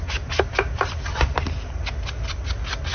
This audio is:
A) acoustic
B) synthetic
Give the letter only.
A